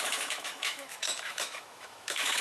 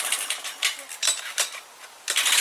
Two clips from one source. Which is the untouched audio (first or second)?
second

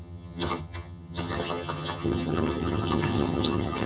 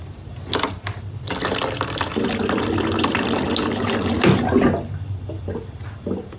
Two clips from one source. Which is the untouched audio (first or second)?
second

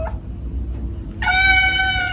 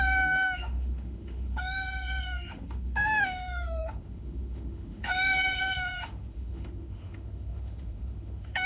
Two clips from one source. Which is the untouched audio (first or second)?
first